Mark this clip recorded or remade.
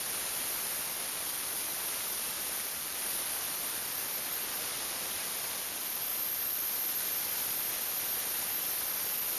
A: recorded